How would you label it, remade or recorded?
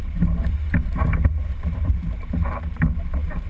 remade